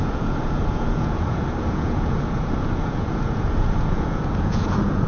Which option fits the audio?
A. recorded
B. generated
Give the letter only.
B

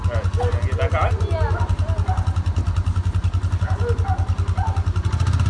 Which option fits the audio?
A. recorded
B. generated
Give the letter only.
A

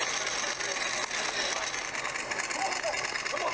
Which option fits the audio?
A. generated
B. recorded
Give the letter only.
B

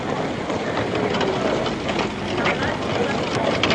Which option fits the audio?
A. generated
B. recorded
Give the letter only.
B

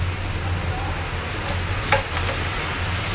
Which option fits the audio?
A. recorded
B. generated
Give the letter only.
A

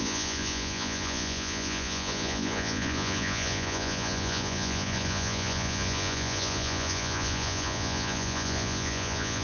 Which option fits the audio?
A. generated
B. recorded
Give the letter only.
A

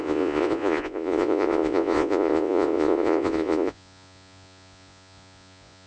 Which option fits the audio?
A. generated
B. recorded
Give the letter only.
A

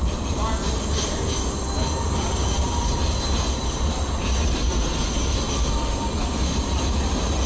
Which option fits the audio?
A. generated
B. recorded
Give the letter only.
B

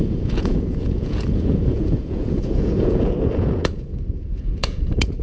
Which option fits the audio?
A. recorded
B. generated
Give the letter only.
B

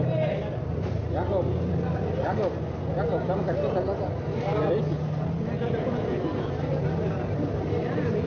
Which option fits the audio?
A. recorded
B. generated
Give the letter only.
A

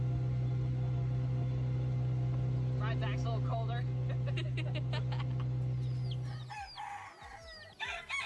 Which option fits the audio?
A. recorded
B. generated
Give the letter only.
A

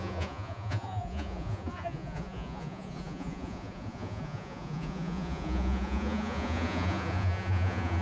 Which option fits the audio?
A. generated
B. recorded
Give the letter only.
A